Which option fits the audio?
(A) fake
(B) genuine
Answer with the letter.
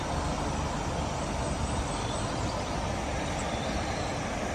B